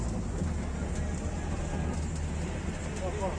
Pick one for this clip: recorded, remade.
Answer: recorded